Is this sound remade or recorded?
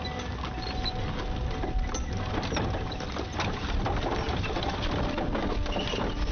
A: recorded